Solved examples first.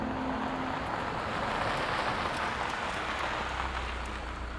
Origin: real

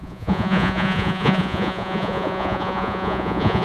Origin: fake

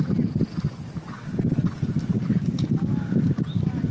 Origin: real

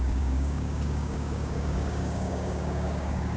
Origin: fake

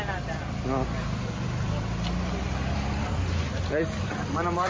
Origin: real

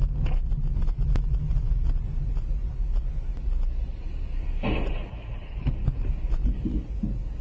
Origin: real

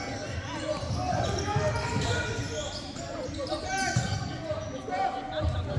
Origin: real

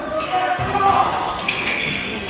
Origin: fake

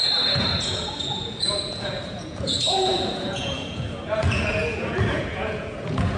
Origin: fake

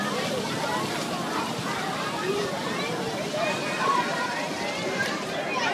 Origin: fake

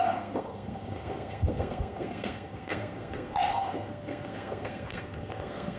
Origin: fake